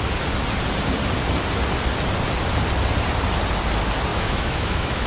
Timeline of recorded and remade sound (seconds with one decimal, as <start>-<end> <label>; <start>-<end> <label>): 0.0-4.1 recorded; 4.1-5.1 remade